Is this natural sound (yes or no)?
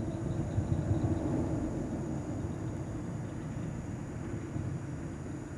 yes